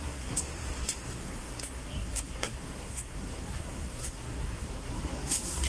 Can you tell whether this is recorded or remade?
remade